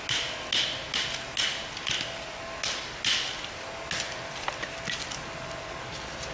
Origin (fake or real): real